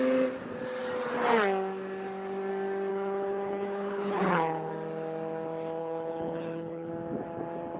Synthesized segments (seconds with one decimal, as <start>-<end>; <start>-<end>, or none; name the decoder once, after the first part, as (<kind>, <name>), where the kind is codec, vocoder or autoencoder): 2.9-4.7 (codec, HILCodec); 5.8-6.9